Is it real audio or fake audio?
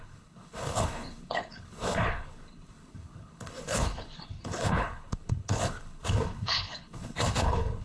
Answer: fake